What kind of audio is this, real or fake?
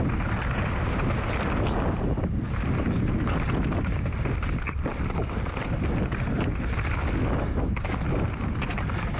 real